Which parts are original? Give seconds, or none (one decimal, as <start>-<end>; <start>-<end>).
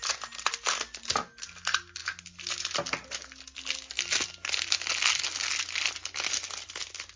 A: 0.0-7.2